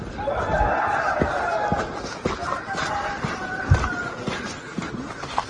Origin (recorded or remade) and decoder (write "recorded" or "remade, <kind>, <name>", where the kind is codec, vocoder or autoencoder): recorded